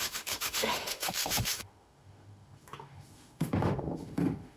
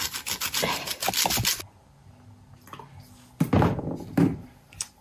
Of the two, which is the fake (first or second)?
first